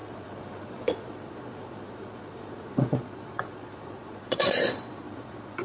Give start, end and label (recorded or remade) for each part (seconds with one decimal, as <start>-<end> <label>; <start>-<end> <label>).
0.0-5.6 remade